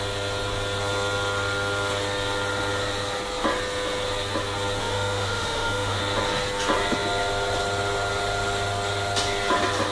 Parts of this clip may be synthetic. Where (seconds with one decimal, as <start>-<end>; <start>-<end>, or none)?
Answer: 4.8-6.0